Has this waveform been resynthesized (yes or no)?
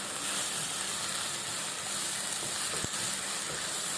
no